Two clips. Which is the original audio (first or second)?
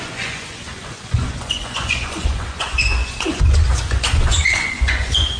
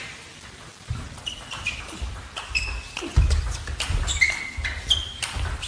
second